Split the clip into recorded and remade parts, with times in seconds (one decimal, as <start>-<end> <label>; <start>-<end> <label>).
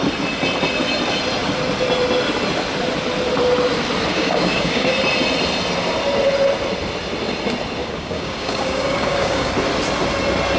0.0-4.1 recorded; 4.1-4.9 remade; 4.9-7.8 recorded; 7.8-9.5 remade; 9.5-10.6 recorded